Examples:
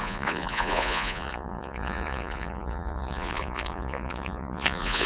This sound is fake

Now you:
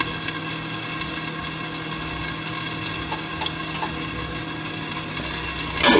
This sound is real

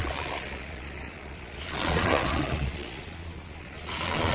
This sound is fake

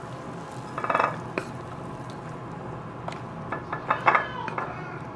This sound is real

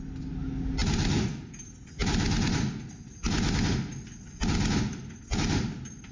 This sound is real